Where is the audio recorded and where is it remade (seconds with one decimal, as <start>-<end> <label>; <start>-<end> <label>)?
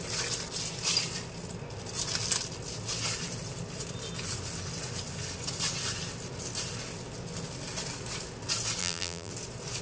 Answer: 0.0-8.8 recorded; 8.8-9.3 remade; 9.3-9.8 recorded